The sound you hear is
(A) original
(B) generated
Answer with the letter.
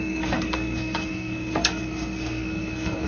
B